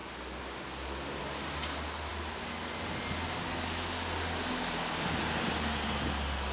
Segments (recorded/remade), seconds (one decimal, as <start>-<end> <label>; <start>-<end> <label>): 0.0-6.5 recorded